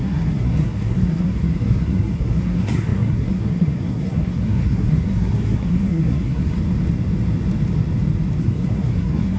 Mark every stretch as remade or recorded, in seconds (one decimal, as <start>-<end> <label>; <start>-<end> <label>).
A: 0.0-6.6 remade; 6.6-8.4 recorded; 8.4-9.4 remade